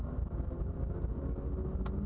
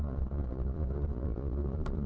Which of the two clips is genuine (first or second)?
first